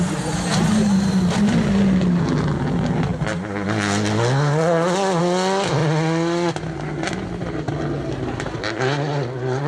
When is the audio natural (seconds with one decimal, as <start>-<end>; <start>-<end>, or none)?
0.0-9.7